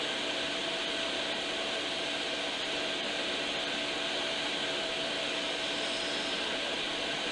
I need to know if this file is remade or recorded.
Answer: recorded